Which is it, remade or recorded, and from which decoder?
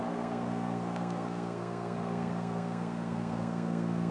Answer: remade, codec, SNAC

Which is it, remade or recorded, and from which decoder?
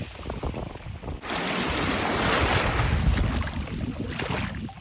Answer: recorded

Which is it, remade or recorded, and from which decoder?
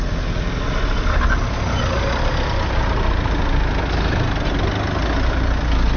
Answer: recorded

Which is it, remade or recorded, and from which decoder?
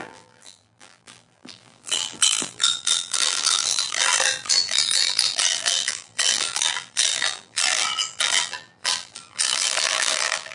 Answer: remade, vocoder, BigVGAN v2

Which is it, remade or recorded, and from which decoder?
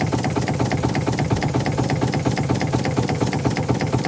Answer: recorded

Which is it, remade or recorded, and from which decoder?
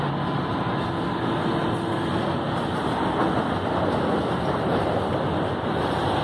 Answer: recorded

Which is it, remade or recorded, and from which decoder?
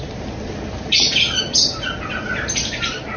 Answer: recorded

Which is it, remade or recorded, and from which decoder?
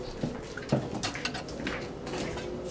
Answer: recorded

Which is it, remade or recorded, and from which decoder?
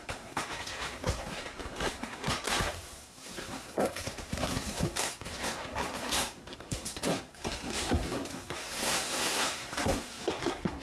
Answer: remade, codec, SNAC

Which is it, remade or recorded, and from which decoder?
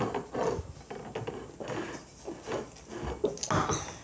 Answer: recorded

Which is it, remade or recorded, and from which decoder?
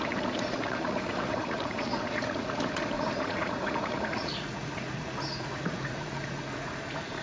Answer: remade, vocoder, Vocos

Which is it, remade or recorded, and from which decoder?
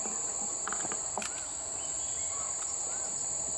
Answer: recorded